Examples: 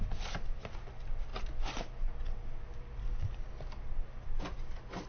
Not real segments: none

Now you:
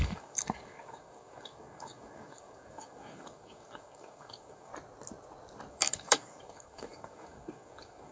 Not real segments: 0.0-4.7 (codec, DAC); 5.7-8.1

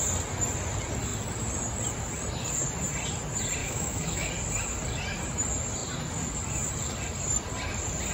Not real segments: 3.6-4.3 (autoencoder, DAC-VAE)

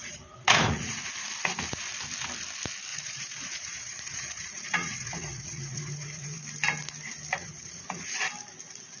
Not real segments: 0.0-1.3 (vocoder, Vocos); 2.9-6.4; 7.4-8.2

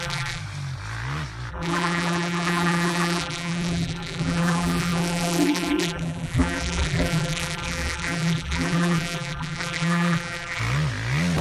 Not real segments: 0.0-0.4 (vocoder, BigVGAN v2); 1.5-10.6